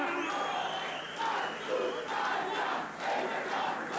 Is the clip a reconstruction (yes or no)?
yes